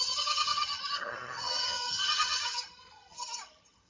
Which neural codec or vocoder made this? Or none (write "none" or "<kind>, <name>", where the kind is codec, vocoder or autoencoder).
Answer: vocoder, HiFi-GAN